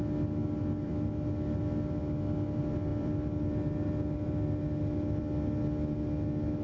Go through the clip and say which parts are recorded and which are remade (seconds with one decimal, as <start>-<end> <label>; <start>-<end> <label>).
0.0-0.4 recorded; 0.4-1.6 remade; 1.6-2.9 recorded; 2.9-5.2 remade; 5.2-6.6 recorded